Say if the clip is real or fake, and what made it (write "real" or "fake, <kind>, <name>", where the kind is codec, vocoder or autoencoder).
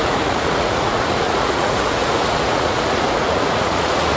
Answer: fake, vocoder, Vocos